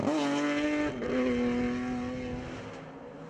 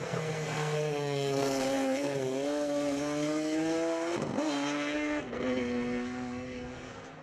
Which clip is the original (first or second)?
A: first